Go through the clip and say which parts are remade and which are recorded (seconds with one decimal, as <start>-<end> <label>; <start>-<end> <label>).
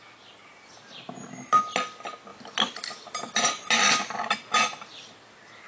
0.0-5.7 recorded